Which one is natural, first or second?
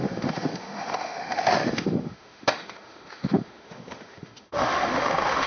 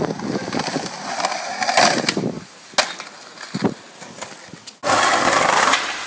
second